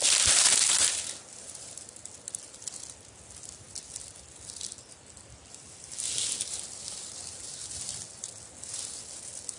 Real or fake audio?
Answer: real